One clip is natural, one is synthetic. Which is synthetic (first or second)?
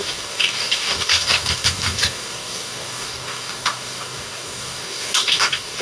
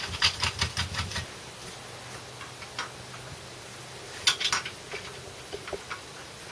first